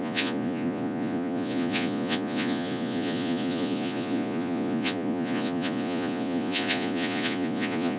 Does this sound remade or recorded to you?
remade